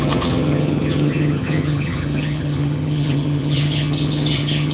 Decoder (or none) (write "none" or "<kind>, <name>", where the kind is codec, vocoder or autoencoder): vocoder, HiFi-GAN